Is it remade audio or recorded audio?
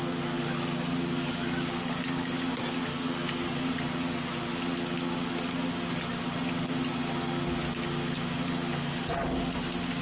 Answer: recorded